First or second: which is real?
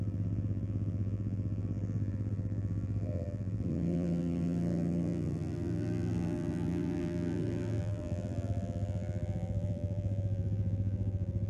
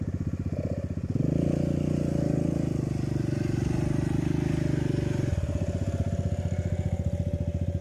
second